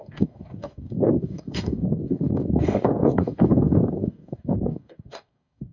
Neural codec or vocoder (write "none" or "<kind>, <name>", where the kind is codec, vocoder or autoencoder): codec, DAC